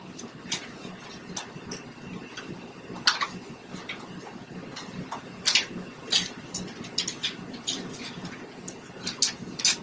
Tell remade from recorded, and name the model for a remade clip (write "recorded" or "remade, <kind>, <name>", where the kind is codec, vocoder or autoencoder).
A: recorded